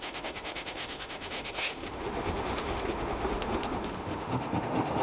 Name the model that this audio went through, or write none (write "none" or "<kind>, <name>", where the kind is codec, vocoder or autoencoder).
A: autoencoder, DAC-VAE